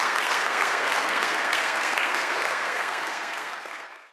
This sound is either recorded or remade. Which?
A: remade